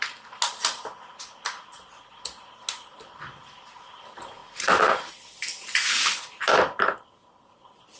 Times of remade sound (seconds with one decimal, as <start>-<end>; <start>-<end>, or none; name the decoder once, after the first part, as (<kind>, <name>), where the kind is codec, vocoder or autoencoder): none